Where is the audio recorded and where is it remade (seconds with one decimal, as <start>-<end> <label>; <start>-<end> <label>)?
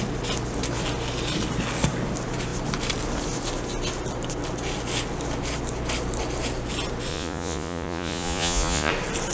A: 0.0-7.1 recorded; 7.1-8.9 remade; 8.9-9.3 recorded